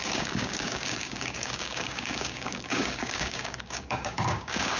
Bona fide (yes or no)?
no